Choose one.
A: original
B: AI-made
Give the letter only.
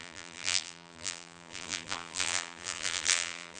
B